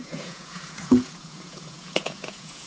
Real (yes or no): no